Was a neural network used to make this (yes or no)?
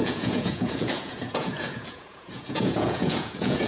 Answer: yes